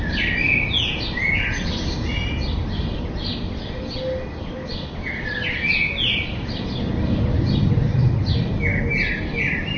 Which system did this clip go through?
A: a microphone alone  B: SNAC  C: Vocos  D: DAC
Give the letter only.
A